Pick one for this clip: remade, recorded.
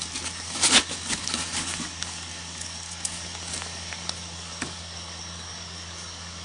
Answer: remade